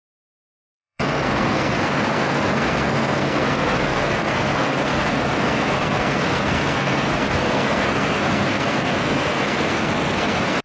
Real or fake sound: fake